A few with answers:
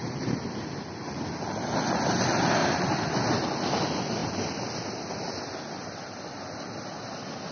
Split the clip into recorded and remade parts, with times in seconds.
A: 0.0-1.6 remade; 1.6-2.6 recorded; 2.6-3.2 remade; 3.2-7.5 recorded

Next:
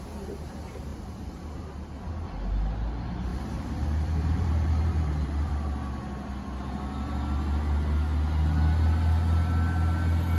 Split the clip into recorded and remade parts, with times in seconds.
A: 0.0-0.9 recorded; 0.9-2.1 remade; 2.1-3.3 recorded; 3.3-5.5 remade; 5.5-10.4 recorded

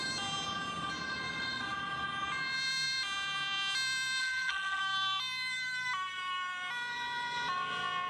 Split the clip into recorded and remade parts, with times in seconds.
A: 0.0-4.2 recorded; 4.2-4.8 remade; 4.8-8.1 recorded

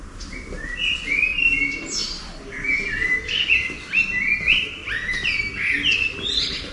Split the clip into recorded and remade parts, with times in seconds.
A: 0.0-2.0 recorded; 2.0-3.4 remade; 3.4-4.8 recorded; 4.8-5.4 remade; 5.4-6.7 recorded

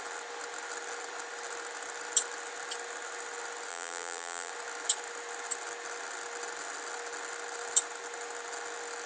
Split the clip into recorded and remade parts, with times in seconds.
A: 0.0-3.7 recorded; 3.7-4.5 remade; 4.5-9.1 recorded

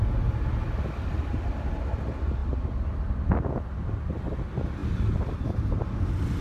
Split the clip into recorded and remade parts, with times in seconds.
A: 0.0-6.4 recorded

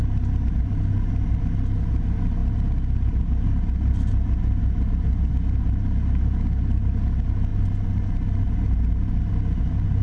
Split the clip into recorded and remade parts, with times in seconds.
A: 0.0-10.0 recorded

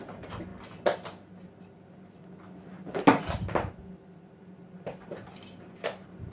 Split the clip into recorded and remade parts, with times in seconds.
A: 0.0-0.5 remade; 0.5-4.3 recorded; 4.3-6.3 remade